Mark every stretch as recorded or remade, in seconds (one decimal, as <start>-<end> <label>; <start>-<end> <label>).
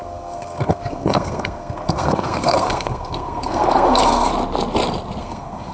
0.0-4.3 remade; 4.3-5.2 recorded; 5.2-5.7 remade